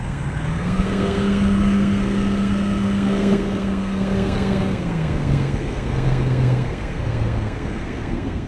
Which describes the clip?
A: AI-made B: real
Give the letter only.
A